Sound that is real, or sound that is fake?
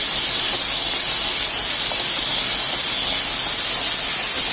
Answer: real